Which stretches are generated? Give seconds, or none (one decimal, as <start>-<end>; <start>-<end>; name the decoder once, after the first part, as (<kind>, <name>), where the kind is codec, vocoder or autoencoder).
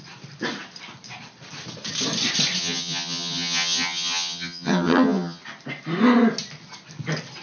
2.6-5.4 (vocoder, HiFi-GAN)